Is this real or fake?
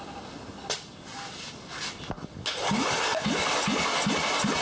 real